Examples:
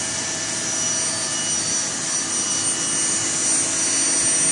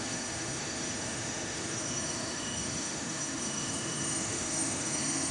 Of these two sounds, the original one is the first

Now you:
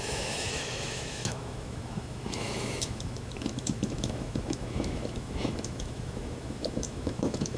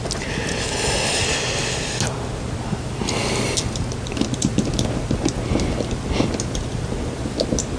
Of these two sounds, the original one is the second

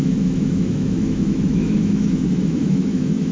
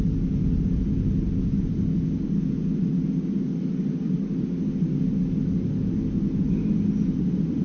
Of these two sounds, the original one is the second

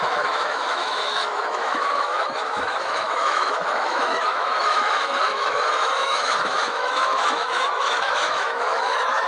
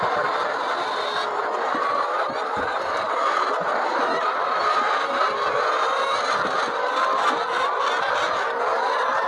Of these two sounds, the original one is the second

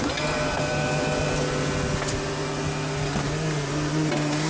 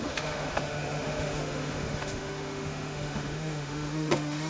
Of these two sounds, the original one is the first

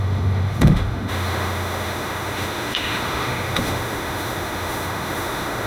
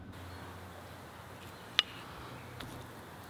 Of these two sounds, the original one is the second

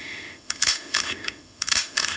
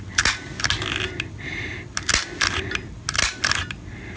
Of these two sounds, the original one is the second